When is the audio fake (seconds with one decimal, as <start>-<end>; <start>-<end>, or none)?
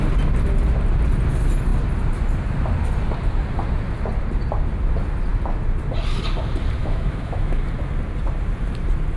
6.8-7.6